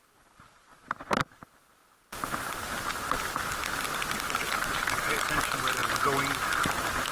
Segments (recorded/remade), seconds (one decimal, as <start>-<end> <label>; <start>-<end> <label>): 0.0-7.1 recorded